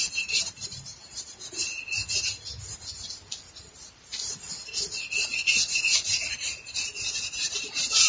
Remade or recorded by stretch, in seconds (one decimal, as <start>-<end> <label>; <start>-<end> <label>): 0.0-1.6 remade; 1.6-6.5 recorded; 6.5-8.1 remade